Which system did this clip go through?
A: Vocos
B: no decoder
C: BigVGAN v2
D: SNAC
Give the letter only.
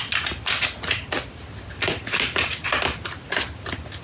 B